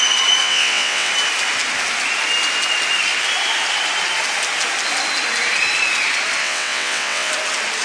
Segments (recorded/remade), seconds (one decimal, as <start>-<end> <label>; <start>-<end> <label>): 0.0-0.4 recorded; 0.4-1.1 remade; 1.1-6.4 recorded; 6.4-7.3 remade; 7.3-7.8 recorded